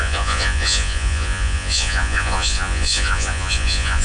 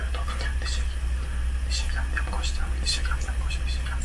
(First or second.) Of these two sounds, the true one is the second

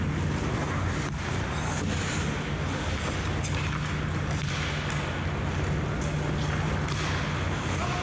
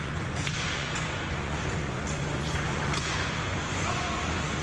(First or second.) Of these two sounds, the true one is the first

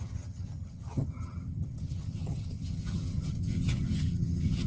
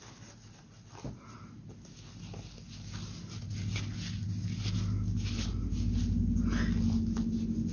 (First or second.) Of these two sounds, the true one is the second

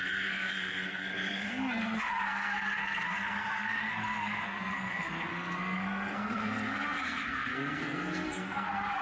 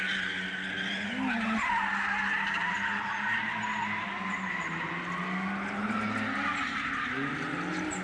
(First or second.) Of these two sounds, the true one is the second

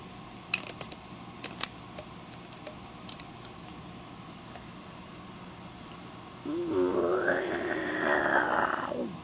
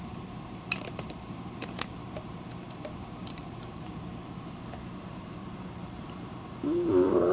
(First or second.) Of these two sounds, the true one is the first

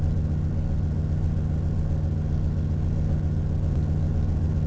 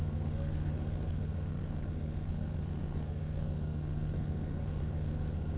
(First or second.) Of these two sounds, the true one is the first